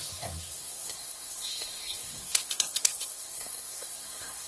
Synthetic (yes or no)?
yes